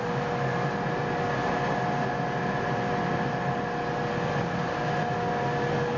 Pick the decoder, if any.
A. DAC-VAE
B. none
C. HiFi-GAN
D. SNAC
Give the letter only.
B